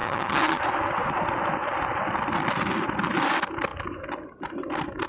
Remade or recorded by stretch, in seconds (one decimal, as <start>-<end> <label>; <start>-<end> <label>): 0.0-0.6 remade; 0.6-5.1 recorded